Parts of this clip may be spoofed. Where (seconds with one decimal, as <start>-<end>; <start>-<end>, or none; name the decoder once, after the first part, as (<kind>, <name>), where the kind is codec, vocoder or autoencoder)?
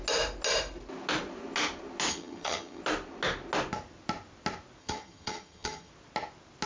2.1-2.8 (vocoder, HiFi-GAN); 4.8-5.9